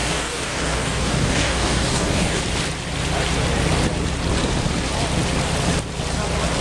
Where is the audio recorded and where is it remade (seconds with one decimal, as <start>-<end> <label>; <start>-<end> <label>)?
0.0-2.4 remade; 2.4-6.6 recorded